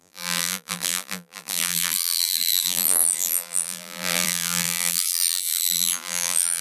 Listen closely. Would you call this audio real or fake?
fake